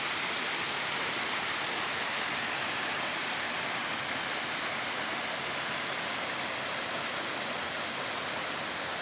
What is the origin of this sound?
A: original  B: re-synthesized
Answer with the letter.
A